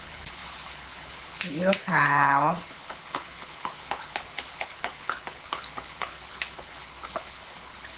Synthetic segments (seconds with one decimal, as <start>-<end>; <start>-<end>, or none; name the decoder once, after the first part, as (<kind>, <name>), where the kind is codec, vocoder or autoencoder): 0.0-8.0 (codec, HILCodec)